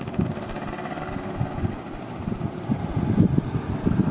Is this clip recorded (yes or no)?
no